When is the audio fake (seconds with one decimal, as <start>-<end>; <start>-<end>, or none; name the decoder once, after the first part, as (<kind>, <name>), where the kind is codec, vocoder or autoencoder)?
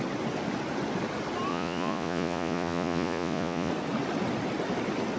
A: 1.5-3.7 (vocoder, Vocos)